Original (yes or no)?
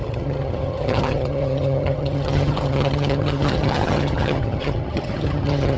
no